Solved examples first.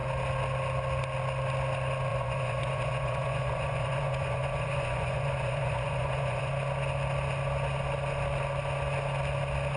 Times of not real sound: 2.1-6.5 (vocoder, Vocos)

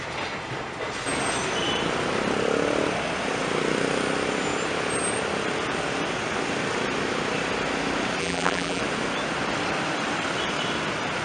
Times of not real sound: 8.2-8.8 (vocoder, BigVGAN v2)

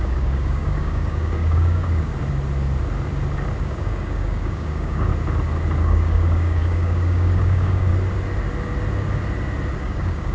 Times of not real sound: 0.0-2.1 (codec, DAC); 3.6-5.1; 5.8-7.9; 9.8-10.3

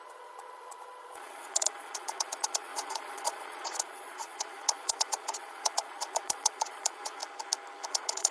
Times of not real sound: 0.0-7.2 (vocoder, Vocos); 7.9-8.3

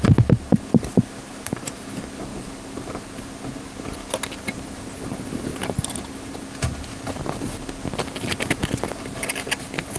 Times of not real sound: none

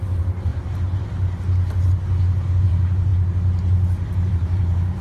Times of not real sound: 0.0-0.5 (vocoder, BigVGAN v2); 2.6-3.1; 4.3-5.0

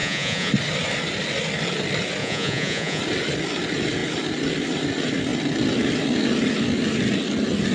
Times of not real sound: 0.0-0.5 (vocoder, Vocos); 2.2-3.0